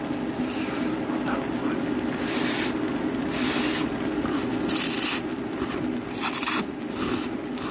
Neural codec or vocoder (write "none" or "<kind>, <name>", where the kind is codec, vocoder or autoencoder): none